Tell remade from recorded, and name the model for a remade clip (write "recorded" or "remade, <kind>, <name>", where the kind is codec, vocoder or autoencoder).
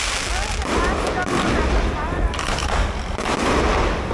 recorded